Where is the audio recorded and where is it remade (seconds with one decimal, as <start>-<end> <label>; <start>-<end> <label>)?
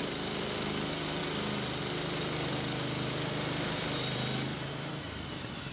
0.0-1.2 remade; 1.2-1.8 recorded; 1.8-2.5 remade; 2.5-3.1 recorded; 3.1-5.7 remade